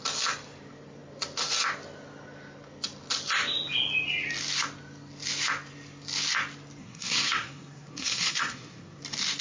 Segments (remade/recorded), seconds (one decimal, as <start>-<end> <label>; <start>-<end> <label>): 0.0-6.8 recorded; 6.8-9.0 remade; 9.0-9.4 recorded